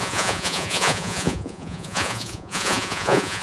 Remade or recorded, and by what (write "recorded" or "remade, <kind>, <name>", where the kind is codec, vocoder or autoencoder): remade, vocoder, Vocos